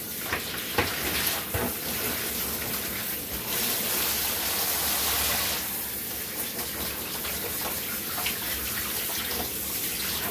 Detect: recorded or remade recorded